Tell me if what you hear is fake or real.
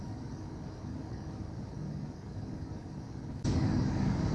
fake